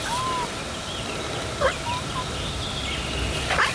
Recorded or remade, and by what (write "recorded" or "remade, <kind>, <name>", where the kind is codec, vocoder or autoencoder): recorded